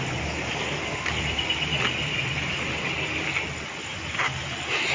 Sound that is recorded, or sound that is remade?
recorded